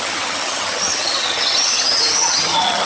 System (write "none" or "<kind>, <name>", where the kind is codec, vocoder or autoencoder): vocoder, HiFi-GAN